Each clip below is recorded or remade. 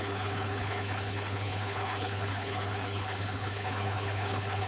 remade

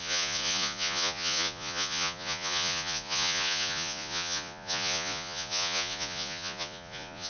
remade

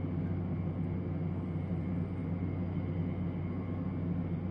recorded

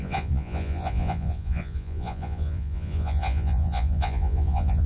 remade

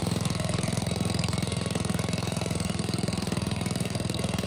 remade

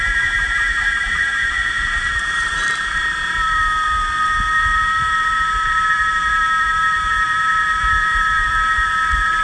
remade